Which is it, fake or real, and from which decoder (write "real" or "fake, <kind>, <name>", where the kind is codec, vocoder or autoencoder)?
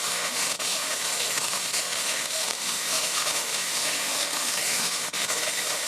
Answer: fake, autoencoder, DAC-VAE